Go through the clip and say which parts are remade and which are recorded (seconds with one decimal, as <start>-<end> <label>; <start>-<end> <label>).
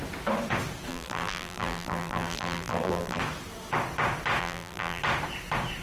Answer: 0.0-0.9 recorded; 0.9-3.2 remade; 3.2-4.4 recorded; 4.4-5.0 remade; 5.0-5.8 recorded